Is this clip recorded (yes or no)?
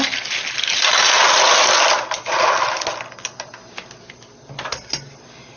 yes